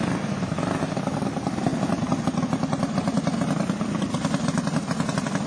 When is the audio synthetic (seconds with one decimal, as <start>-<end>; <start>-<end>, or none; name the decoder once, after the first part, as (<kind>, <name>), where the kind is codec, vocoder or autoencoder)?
none